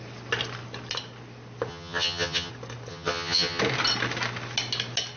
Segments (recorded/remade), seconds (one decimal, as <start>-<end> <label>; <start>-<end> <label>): 0.0-1.7 recorded; 1.7-2.5 remade; 2.5-2.9 recorded; 2.9-3.6 remade; 3.6-5.2 recorded